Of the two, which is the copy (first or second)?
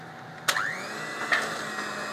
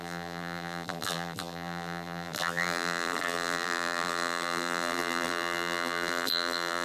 second